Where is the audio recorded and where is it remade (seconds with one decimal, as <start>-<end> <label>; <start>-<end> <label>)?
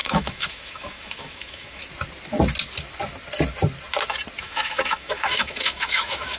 0.0-1.8 remade; 1.8-4.4 recorded; 4.4-6.4 remade